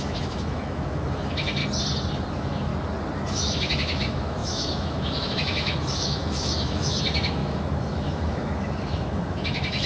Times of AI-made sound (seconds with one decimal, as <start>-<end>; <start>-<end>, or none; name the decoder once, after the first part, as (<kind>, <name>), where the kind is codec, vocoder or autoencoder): 0.0-1.6 (autoencoder, DAC-VAE); 2.3-2.7; 3.3-9.9